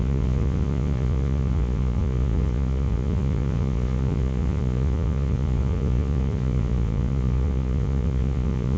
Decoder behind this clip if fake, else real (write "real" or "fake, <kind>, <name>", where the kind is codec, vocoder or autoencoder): fake, vocoder, Vocos